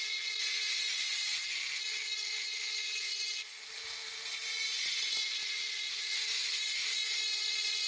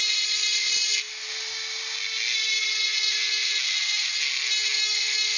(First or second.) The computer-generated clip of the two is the first